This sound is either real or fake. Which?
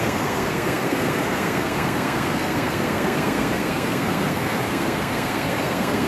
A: fake